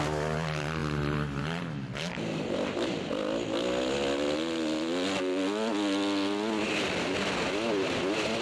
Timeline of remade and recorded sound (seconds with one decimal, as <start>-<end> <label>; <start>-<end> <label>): 0.0-8.4 recorded